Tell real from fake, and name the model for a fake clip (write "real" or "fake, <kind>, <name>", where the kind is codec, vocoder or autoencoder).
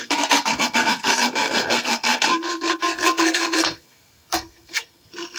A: fake, codec, SNAC